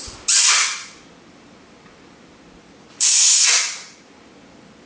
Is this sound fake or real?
fake